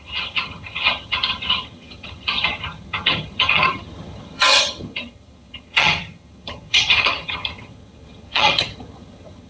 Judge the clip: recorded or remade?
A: remade